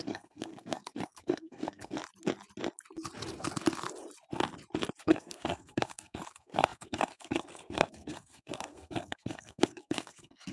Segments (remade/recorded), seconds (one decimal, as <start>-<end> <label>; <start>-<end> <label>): 0.0-2.0 remade; 2.0-5.0 recorded; 5.0-10.5 remade